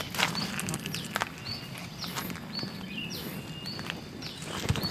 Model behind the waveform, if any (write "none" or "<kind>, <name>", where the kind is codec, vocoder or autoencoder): none